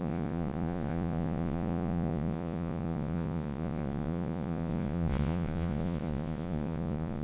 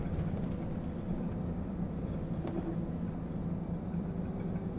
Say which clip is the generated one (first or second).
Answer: first